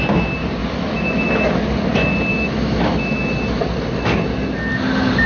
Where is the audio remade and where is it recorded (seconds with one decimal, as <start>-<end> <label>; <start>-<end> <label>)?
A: 0.0-0.6 recorded; 0.6-1.3 remade; 1.3-2.3 recorded; 2.3-3.6 remade; 3.6-5.3 recorded